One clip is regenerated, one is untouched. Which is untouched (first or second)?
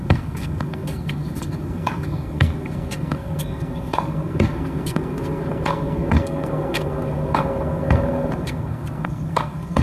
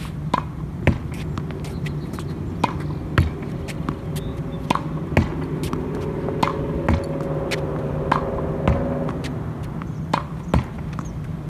second